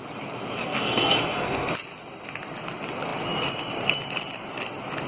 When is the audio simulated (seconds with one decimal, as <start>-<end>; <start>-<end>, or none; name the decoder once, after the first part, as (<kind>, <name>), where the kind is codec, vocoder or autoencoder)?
0.6-1.7 (codec, SNAC)

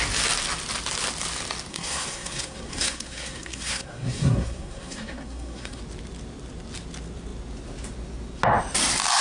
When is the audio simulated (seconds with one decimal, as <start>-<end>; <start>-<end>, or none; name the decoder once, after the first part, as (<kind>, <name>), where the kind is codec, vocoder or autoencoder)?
1.7-5.8 (codec, SNAC)

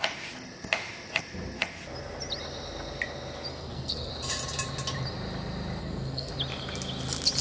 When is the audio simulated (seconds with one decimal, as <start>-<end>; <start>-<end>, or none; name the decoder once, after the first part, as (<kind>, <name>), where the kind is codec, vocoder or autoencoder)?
3.5-4.1 (codec, SNAC); 5.8-6.3

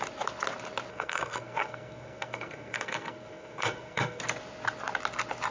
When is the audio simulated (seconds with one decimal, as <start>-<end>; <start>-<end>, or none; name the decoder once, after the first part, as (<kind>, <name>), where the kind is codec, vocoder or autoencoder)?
0.9-4.2 (codec, SNAC)